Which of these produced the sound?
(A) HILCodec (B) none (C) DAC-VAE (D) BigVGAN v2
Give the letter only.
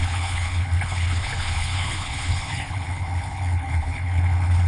A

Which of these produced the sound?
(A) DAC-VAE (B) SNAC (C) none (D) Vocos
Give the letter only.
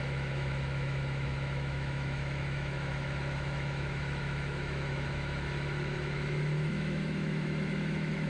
A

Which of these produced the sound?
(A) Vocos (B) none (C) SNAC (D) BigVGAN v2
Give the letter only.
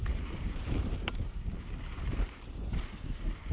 D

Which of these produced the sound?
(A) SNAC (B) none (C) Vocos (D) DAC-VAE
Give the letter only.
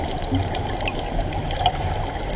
B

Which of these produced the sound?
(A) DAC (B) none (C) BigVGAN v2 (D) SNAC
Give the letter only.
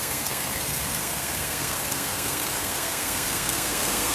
D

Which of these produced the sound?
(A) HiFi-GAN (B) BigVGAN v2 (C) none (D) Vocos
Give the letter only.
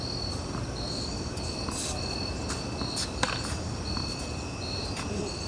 C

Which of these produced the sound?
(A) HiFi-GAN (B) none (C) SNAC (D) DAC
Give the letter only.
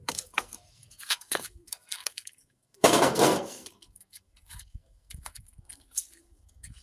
C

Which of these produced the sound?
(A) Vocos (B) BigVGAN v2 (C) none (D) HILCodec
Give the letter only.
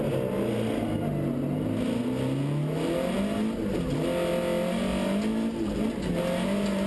C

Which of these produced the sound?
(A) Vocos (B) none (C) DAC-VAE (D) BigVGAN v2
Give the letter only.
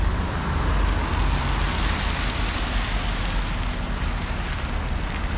B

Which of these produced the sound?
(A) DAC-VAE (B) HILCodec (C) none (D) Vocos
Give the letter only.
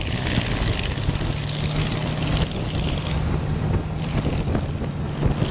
C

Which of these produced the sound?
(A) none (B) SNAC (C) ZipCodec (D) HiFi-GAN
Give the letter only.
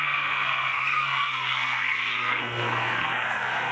B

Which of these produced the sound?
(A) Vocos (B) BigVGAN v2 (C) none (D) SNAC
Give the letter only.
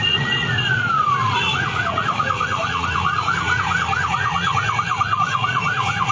A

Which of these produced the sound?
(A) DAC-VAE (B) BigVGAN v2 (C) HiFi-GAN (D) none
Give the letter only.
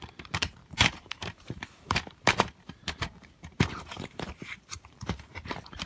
B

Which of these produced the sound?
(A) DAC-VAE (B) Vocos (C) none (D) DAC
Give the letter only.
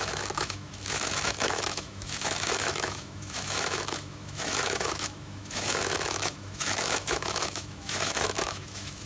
A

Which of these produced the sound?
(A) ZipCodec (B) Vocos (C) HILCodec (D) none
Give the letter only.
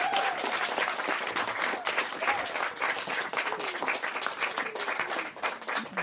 D